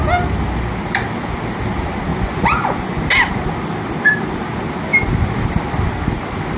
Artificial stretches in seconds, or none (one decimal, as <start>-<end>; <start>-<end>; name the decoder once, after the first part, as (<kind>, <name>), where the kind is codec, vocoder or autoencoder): 2.1-3.0 (vocoder, Vocos)